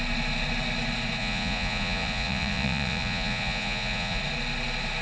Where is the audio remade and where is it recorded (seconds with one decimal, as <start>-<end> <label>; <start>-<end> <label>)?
0.0-1.2 recorded; 1.2-4.2 remade; 4.2-5.0 recorded